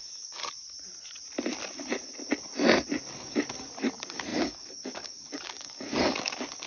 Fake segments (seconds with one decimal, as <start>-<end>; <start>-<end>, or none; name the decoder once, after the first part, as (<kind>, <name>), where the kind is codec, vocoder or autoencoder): 0.0-0.4 (codec, DAC); 3.1-6.7